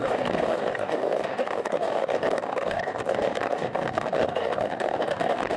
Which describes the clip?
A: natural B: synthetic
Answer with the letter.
B